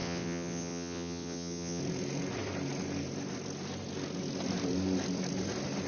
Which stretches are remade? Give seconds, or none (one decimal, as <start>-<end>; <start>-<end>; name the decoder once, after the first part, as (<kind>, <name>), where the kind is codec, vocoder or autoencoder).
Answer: 0.0-1.8 (vocoder, WaveNeXt)